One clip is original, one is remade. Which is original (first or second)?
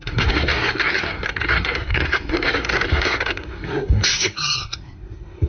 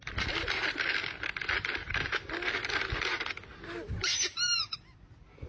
second